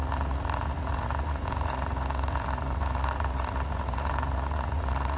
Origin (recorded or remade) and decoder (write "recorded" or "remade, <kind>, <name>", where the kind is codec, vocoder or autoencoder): remade, vocoder, Vocos